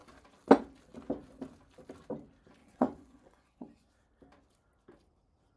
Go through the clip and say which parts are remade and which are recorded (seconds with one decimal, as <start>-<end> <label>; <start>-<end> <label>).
0.0-2.6 recorded; 2.6-3.9 remade; 3.9-5.6 recorded